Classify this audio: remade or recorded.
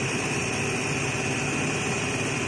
remade